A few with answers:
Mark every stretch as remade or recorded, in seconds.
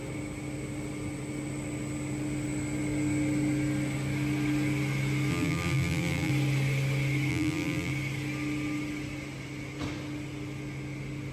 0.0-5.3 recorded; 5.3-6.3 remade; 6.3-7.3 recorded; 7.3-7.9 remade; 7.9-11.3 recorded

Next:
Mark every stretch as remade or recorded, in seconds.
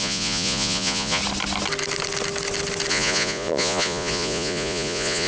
0.0-1.2 remade; 1.2-2.9 recorded; 2.9-5.3 remade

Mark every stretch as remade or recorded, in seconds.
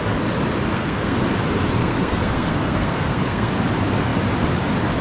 0.0-0.7 recorded; 0.7-1.2 remade; 1.2-1.8 recorded; 1.8-3.5 remade; 3.5-5.0 recorded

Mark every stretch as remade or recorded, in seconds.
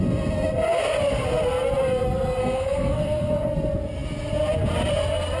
0.0-2.4 recorded; 2.4-3.3 remade; 3.3-5.4 recorded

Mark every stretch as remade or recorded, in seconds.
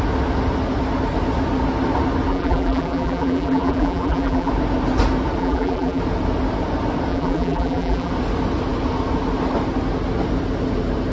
0.0-2.3 recorded; 2.3-4.5 remade; 4.5-5.4 recorded; 5.4-6.0 remade; 6.0-7.1 recorded; 7.1-8.1 remade; 8.1-11.1 recorded